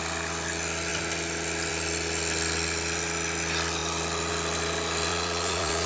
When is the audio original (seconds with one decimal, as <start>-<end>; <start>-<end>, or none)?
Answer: 0.0-5.1